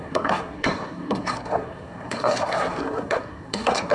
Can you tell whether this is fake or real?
fake